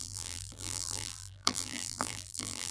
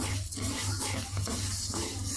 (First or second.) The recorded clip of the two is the second